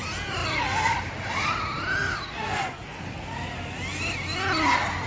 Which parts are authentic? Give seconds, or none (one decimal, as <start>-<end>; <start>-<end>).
0.0-5.1